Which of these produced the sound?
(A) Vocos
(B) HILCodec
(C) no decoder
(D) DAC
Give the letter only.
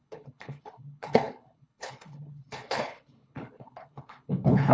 B